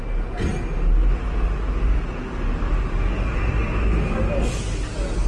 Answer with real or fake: real